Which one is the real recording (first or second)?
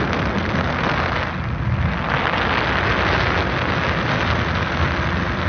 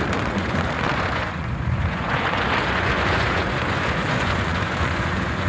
first